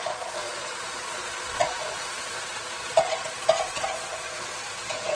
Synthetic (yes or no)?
yes